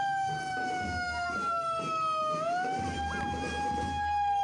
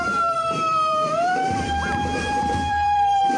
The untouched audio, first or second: first